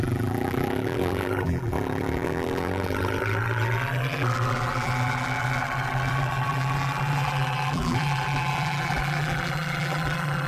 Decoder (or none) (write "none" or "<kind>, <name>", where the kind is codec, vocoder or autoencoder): vocoder, BigVGAN v2